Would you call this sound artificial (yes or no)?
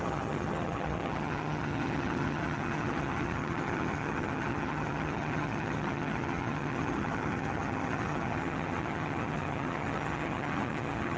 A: yes